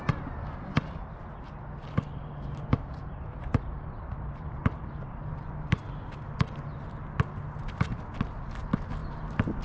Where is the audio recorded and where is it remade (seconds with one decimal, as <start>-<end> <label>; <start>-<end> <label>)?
0.0-2.1 recorded; 2.1-5.8 remade; 5.8-9.0 recorded; 9.0-9.6 remade

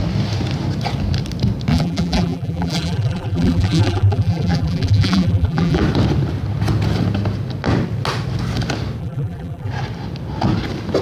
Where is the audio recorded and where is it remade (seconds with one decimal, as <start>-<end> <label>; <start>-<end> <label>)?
0.0-1.7 recorded; 1.7-5.8 remade; 5.8-9.0 recorded; 9.0-9.7 remade; 9.7-11.0 recorded